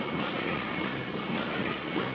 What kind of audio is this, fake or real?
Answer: fake